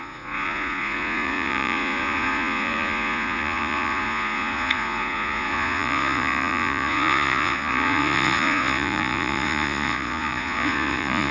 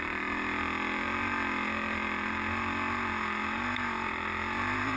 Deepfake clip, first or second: first